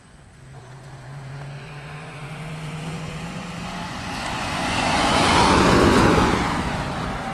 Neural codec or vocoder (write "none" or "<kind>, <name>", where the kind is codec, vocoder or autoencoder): vocoder, Vocos